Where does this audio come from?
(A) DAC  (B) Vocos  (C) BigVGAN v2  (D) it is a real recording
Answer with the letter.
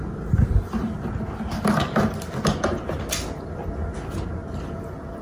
D